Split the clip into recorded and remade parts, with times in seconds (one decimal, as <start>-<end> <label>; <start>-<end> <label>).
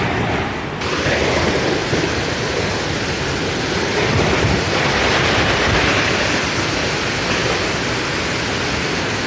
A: 0.0-9.3 recorded